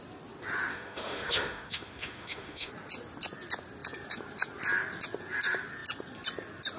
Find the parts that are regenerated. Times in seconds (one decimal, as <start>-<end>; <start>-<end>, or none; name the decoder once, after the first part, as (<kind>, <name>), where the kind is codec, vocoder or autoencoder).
0.7-2.7 (autoencoder, DAC-VAE)